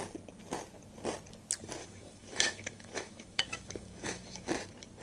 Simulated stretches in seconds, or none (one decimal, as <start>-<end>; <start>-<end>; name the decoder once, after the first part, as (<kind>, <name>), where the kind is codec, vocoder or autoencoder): 1.8-4.5 (autoencoder, DAC-VAE)